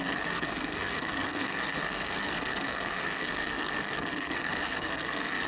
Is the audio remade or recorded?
remade